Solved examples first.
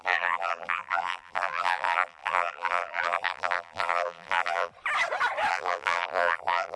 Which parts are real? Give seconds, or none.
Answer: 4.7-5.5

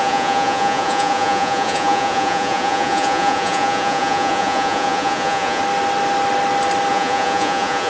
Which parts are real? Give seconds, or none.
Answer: 5.6-6.9

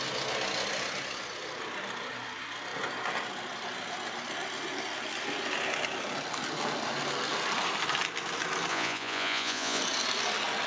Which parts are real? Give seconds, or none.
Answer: 0.0-8.7; 9.8-10.7